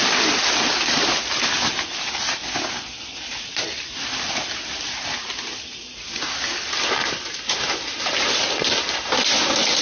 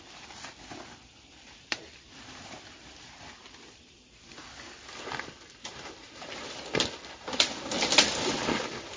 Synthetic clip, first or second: second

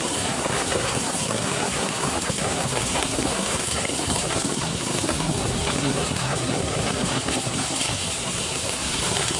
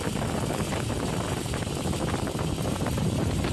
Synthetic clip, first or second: first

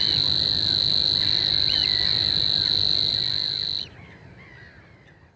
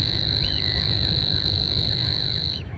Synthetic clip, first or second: second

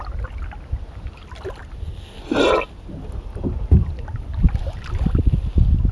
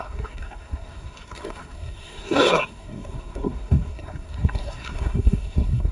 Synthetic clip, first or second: second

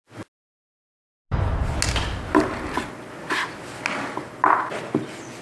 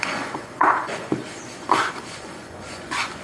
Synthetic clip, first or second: second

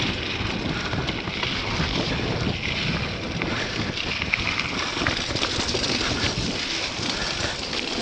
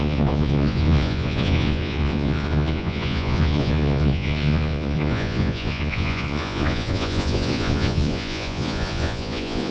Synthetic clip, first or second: second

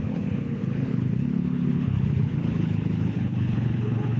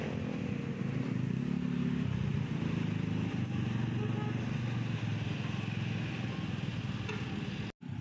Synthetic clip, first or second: first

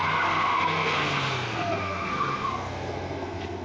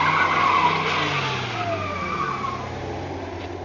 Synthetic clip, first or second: first